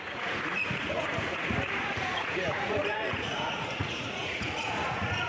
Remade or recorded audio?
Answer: remade